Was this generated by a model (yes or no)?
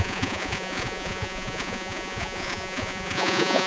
yes